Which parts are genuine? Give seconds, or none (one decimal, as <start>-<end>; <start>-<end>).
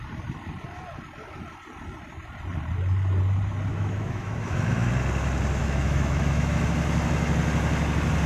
0.0-3.7; 4.9-5.6; 6.6-8.3